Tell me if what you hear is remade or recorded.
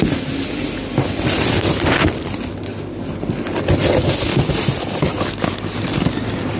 recorded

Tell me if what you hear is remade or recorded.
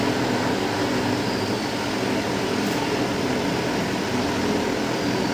recorded